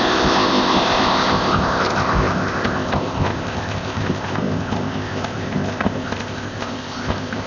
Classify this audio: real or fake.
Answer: fake